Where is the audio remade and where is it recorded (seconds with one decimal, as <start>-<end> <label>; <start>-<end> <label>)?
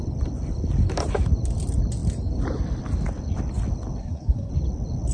0.0-4.0 recorded; 4.0-4.5 remade; 4.5-5.1 recorded